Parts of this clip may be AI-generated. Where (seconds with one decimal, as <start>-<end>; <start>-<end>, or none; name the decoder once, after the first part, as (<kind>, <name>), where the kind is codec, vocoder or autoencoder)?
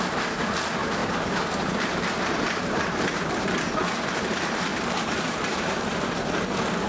1.0-3.4 (vocoder, BigVGAN v2); 4.7-6.1